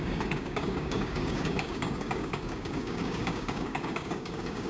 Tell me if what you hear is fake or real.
fake